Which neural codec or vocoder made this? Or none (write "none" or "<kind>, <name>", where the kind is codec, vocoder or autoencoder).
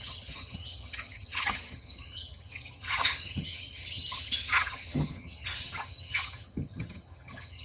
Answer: vocoder, HiFi-GAN